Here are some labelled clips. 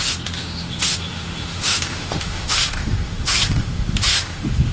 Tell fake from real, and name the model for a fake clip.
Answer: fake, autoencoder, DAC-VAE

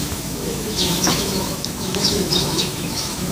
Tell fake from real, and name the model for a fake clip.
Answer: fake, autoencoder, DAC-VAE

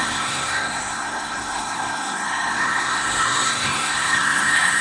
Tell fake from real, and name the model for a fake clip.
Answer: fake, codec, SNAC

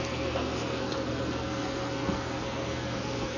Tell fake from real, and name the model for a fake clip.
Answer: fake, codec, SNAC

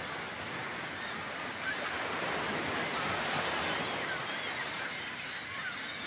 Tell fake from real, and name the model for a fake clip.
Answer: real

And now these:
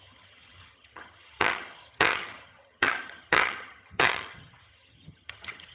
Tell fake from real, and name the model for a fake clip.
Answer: fake, vocoder, HiFi-GAN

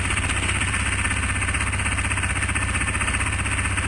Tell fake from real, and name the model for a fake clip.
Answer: real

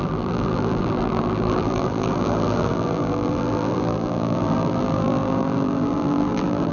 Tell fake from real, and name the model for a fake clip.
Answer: fake, vocoder, BigVGAN v2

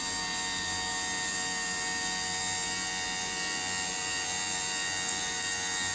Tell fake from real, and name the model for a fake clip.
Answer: real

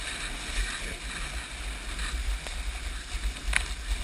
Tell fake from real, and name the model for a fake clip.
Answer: real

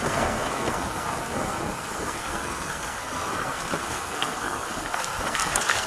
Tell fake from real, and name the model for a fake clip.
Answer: fake, codec, SNAC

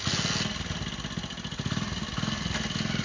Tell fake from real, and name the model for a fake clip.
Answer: real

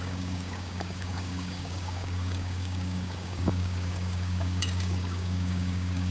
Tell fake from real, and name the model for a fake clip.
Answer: fake, codec, DAC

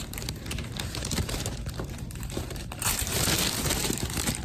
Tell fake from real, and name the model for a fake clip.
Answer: fake, vocoder, BigVGAN v2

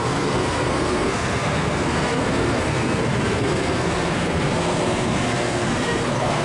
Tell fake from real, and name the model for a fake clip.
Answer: fake, codec, SNAC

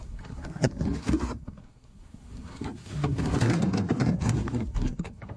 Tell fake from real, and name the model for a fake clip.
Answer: fake, codec, SNAC